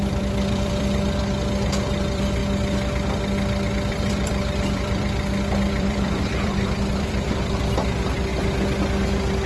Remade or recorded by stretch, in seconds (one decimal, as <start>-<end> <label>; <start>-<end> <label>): 0.0-1.2 remade; 1.2-1.8 recorded; 1.8-2.4 remade; 2.4-3.7 recorded; 3.7-8.3 remade; 8.3-9.1 recorded; 9.1-9.5 remade